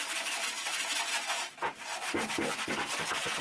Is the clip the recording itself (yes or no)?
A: yes